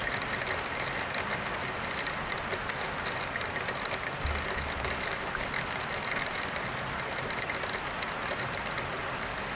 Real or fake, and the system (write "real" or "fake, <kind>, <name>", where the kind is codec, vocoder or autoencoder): real